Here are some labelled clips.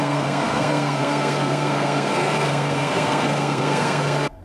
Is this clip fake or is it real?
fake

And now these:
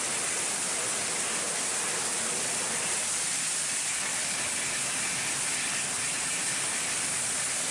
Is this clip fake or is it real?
real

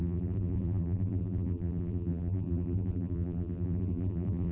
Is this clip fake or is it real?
fake